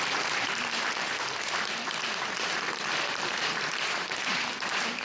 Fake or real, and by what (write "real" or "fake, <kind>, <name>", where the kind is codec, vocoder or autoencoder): fake, vocoder, BigVGAN v2